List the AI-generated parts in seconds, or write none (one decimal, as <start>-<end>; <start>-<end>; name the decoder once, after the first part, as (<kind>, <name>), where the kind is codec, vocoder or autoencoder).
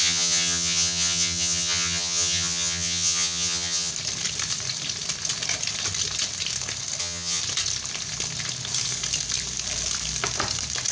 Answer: 0.0-3.9 (vocoder, HiFi-GAN); 7.0-7.4